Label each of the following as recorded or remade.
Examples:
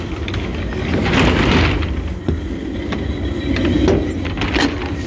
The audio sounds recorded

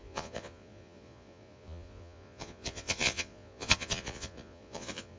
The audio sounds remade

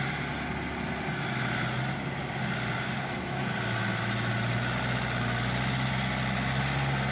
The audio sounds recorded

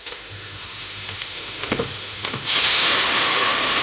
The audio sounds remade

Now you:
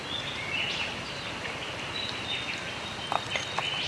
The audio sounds recorded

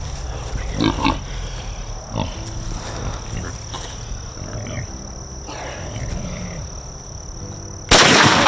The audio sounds recorded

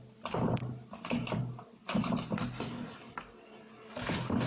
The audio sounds recorded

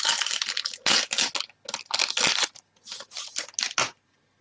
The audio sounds recorded